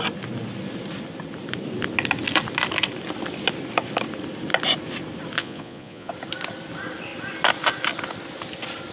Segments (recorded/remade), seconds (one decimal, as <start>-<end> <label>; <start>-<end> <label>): 0.0-5.4 recorded; 5.4-6.1 remade; 6.1-8.9 recorded